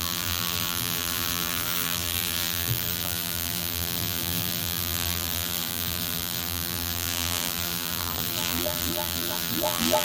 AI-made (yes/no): yes